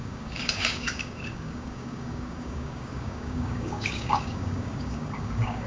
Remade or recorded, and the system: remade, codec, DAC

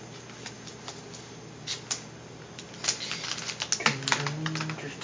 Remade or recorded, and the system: recorded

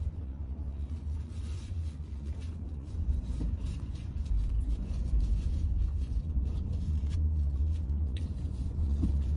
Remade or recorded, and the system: remade, vocoder, Vocos